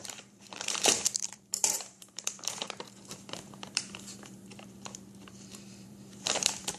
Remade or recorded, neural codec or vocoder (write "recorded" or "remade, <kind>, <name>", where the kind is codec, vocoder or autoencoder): remade, vocoder, BigVGAN v2